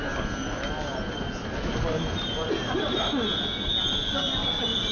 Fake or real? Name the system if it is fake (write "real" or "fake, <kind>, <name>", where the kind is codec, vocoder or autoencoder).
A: real